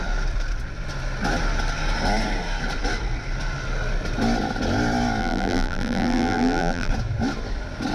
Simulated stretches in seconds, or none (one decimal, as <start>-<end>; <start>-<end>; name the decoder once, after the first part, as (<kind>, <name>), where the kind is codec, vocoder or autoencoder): 5.2-6.9 (vocoder, BigVGAN v2)